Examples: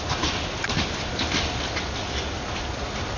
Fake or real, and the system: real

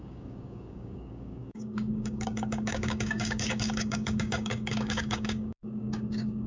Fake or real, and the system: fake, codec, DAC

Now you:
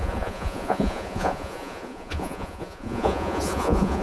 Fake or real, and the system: fake, vocoder, Vocos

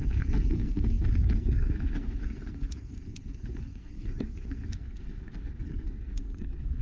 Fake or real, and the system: fake, codec, SNAC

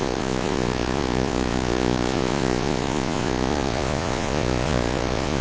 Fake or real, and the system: fake, vocoder, Vocos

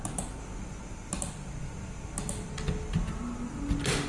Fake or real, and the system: real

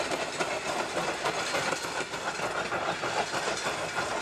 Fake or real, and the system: real